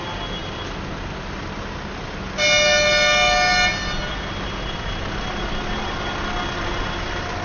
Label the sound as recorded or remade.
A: recorded